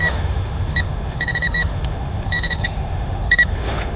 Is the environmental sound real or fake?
fake